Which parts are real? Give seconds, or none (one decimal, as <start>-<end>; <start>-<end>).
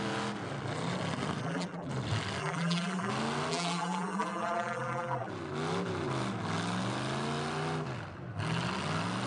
0.0-1.4; 1.9-2.4; 3.1-3.5; 5.3-9.3